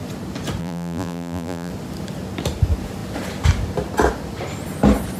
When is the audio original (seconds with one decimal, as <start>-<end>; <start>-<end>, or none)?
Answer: 0.0-0.6; 1.7-5.2